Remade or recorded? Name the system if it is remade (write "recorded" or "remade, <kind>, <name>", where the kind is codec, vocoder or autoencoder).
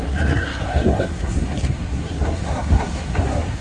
remade, codec, SNAC